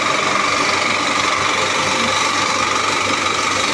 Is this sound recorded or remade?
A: recorded